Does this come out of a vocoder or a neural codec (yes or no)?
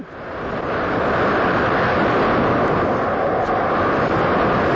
no